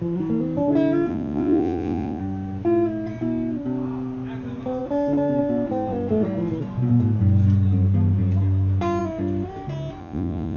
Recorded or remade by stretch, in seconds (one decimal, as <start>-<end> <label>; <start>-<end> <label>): 0.0-1.1 recorded; 1.1-2.2 remade; 2.2-10.0 recorded; 10.0-10.6 remade